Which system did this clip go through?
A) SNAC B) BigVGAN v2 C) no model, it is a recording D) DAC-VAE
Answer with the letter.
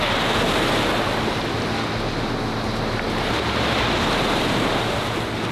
C